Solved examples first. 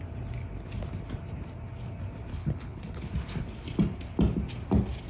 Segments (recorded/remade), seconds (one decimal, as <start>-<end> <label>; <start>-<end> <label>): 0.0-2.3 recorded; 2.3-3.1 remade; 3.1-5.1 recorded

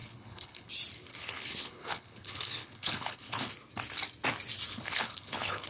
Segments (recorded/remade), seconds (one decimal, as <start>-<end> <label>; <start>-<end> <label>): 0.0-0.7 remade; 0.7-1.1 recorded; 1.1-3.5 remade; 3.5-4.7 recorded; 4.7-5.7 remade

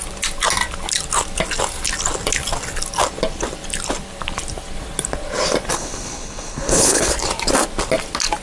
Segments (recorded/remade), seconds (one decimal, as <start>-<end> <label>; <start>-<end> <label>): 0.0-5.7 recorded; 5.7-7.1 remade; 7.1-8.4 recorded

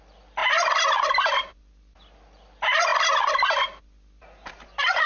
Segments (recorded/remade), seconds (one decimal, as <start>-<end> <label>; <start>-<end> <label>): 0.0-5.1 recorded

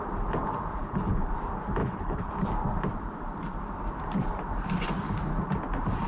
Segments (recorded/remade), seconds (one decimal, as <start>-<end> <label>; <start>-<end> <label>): 0.0-0.8 recorded; 0.8-1.3 remade; 1.3-1.8 recorded; 1.8-2.3 remade; 2.3-6.1 recorded

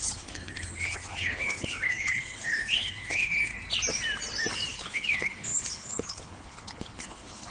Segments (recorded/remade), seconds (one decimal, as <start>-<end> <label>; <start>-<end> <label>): 0.0-3.5 remade; 3.5-4.7 recorded; 4.7-7.5 remade